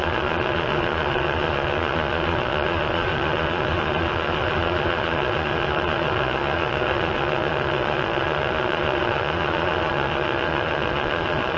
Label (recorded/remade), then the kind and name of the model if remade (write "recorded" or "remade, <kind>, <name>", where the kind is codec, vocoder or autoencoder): remade, vocoder, Vocos